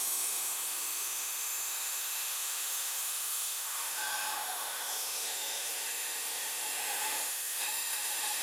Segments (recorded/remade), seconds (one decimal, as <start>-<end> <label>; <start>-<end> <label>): 0.0-8.4 remade

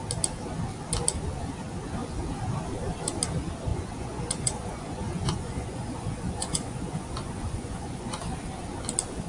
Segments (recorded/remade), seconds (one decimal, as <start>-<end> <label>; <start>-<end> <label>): 0.0-3.7 recorded; 3.7-8.3 remade; 8.3-9.3 recorded